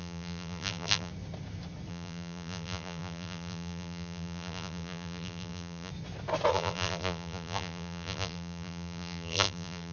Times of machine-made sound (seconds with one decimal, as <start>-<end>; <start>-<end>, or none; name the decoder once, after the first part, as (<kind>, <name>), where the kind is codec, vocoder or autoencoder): 0.0-1.1 (vocoder, BigVGAN v2); 1.9-5.9; 6.5-9.9